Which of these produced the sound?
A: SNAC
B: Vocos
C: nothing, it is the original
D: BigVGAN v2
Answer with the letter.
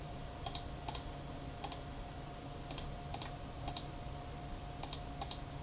C